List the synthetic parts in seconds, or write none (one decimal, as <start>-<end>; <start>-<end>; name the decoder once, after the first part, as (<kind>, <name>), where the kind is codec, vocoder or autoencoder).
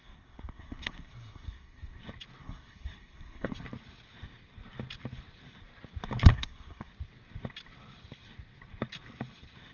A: 0.0-2.0 (codec, SNAC); 2.4-3.6; 6.3-6.9